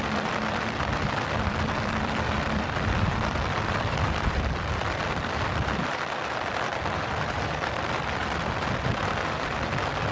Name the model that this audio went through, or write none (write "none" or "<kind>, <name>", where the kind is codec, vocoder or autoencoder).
vocoder, BigVGAN v2